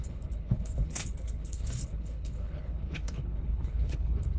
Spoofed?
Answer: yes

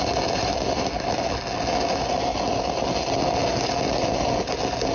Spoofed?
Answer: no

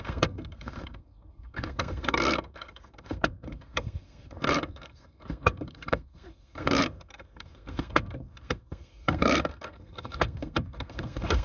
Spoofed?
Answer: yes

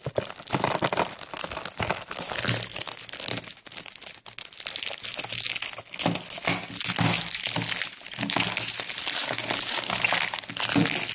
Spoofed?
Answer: no